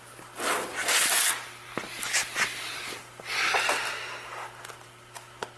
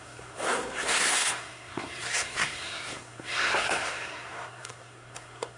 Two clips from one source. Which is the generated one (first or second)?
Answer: second